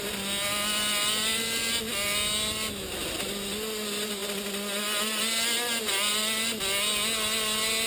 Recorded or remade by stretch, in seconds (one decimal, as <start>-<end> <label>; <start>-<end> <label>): 0.0-7.9 recorded